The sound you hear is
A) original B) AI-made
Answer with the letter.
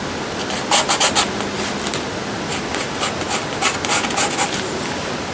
A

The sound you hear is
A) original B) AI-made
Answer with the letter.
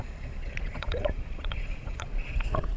B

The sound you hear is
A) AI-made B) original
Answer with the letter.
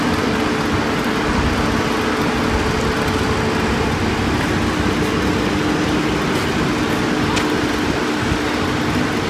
B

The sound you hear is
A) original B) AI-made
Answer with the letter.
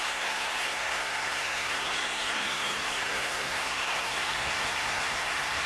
B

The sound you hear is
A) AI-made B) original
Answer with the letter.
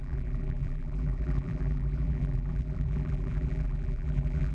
A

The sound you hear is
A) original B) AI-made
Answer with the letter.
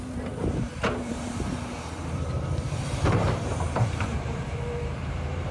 B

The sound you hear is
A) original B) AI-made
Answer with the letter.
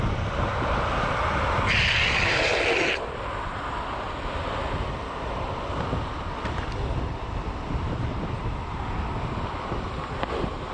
A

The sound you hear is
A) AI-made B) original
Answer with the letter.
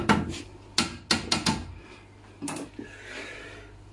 B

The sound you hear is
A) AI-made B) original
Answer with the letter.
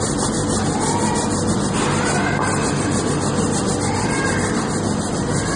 B